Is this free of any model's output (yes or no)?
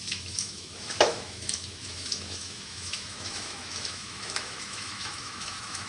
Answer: no